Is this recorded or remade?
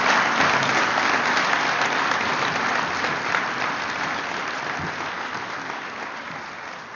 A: recorded